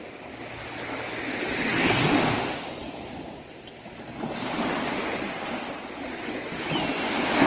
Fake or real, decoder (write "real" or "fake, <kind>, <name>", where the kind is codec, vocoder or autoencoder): real